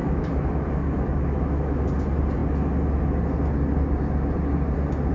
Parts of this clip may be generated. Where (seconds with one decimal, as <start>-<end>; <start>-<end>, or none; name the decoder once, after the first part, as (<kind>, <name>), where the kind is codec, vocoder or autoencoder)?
0.0-1.9 (autoencoder, DAC-VAE)